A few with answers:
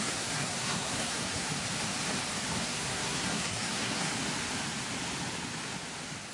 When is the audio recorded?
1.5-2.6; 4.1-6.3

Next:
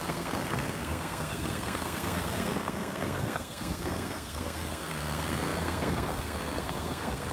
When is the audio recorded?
none